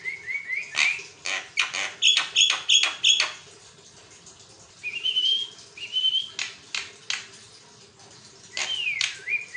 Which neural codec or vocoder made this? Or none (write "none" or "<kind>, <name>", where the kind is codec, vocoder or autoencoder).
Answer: none